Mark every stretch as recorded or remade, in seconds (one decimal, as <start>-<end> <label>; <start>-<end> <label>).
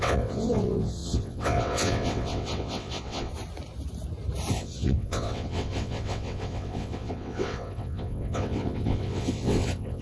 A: 0.0-3.3 remade; 3.3-4.5 recorded; 4.5-10.0 remade